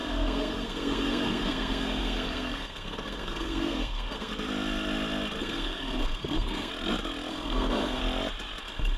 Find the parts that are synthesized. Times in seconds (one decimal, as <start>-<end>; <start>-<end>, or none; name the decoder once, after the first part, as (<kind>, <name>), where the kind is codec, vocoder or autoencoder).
0.0-4.3 (codec, SNAC); 5.4-6.7; 7.3-8.0; 8.6-9.0